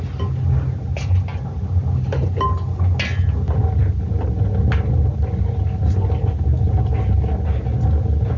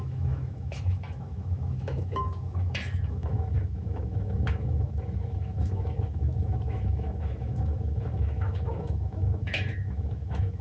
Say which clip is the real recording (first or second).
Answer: first